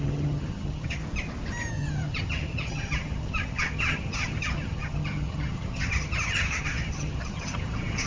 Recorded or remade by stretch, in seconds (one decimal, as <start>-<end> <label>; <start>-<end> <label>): 0.0-1.0 remade; 1.0-1.7 recorded; 1.7-8.1 remade